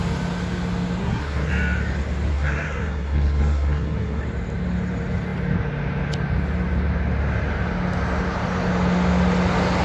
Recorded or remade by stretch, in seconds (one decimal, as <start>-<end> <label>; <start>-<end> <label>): 0.0-1.0 recorded; 1.0-1.5 remade; 1.5-2.3 recorded; 2.3-4.2 remade; 4.2-9.8 recorded